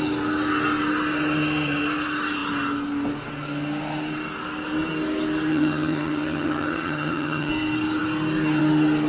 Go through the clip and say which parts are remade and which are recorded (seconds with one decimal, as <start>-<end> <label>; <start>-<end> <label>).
0.0-5.5 recorded; 5.5-7.5 remade; 7.5-9.1 recorded

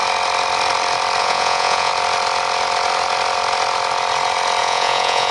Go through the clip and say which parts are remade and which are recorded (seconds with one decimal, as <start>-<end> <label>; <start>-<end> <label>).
0.0-1.2 recorded; 1.2-1.9 remade; 1.9-4.6 recorded; 4.6-5.3 remade

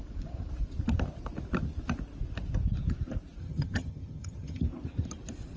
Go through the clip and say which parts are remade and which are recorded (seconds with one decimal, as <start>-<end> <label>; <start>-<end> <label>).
0.0-3.4 recorded; 3.4-4.6 remade; 4.6-5.6 recorded

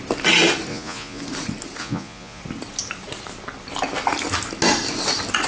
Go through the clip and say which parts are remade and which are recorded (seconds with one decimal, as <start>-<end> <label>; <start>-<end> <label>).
0.0-0.7 recorded; 0.7-1.2 remade; 1.2-1.8 recorded; 1.8-2.4 remade; 2.4-5.5 recorded

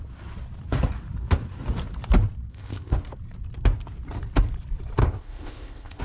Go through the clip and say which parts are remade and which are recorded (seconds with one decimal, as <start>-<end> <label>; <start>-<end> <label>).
0.0-2.5 recorded; 2.5-3.0 remade; 3.0-5.0 recorded; 5.0-6.0 remade

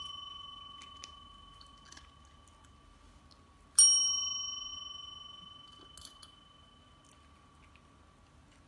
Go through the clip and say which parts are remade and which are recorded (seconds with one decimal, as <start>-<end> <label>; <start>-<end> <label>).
0.0-8.7 recorded